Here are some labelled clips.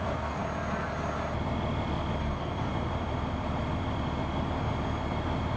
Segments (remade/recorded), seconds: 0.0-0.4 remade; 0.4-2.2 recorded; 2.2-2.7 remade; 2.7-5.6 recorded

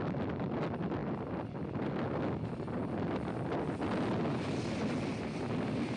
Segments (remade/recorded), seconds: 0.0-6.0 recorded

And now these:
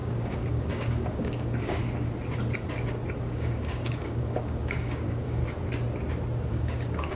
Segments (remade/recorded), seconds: 0.0-1.8 remade; 1.8-3.2 recorded; 3.2-5.4 remade; 5.4-6.5 recorded; 6.5-7.1 remade